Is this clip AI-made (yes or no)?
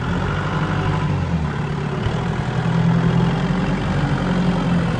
no